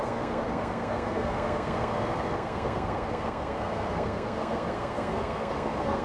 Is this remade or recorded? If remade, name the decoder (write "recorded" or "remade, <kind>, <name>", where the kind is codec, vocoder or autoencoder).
remade, codec, SNAC